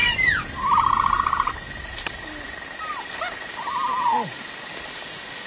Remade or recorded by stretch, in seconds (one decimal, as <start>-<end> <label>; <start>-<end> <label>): 0.0-5.5 recorded